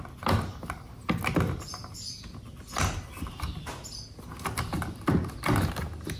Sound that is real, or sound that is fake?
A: real